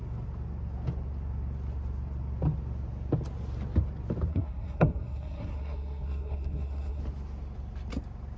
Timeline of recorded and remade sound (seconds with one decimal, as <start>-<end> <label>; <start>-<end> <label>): 0.0-4.3 recorded; 4.3-7.0 remade; 7.0-8.4 recorded